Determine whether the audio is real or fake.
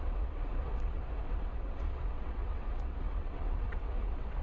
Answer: fake